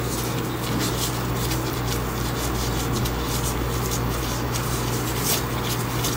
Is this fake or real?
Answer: real